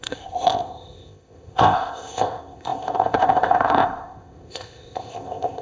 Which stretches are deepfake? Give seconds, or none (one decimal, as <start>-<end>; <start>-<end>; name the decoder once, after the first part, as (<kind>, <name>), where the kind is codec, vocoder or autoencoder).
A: 0.0-5.6 (codec, ZipCodec)